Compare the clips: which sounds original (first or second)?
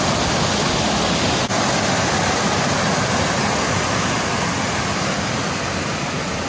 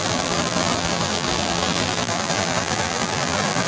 first